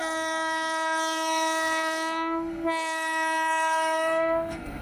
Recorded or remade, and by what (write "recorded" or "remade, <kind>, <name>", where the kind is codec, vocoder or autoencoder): remade, codec, SNAC